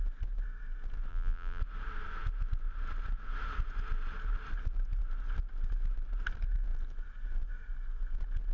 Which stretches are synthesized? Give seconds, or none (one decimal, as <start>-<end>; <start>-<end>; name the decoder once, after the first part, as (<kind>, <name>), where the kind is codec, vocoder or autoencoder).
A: 1.1-1.6 (vocoder, BigVGAN v2)